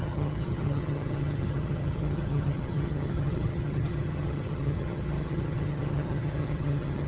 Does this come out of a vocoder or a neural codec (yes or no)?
yes